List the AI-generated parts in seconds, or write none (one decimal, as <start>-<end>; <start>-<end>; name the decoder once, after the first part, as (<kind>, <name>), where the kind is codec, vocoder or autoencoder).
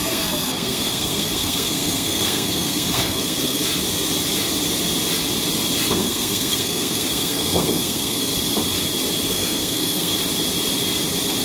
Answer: 0.0-3.6 (codec, SNAC); 5.9-8.3; 9.3-10.1